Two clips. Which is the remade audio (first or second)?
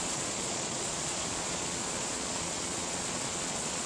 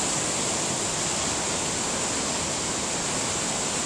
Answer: first